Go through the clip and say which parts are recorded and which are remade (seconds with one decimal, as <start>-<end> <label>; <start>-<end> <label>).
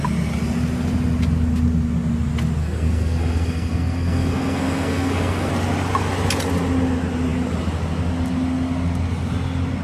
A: 0.0-2.6 recorded; 2.6-5.5 remade; 5.5-9.8 recorded